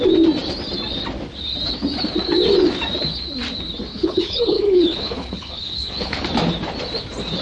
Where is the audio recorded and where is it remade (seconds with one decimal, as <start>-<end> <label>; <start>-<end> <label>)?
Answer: 0.0-3.9 recorded; 3.9-6.3 remade; 6.3-7.4 recorded